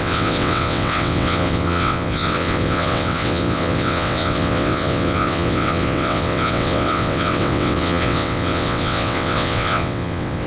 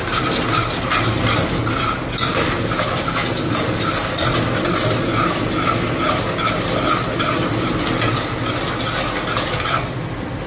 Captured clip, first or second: second